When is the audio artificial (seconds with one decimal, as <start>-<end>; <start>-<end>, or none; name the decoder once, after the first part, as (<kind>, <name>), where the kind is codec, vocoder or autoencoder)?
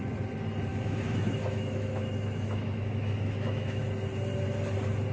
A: 0.7-3.8 (autoencoder, DAC-VAE)